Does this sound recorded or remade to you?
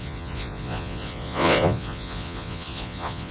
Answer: remade